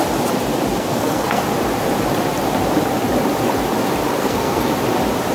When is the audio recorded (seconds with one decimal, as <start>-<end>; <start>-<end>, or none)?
0.0-0.7; 1.4-4.2; 4.7-5.3